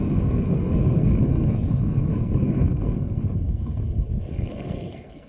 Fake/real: fake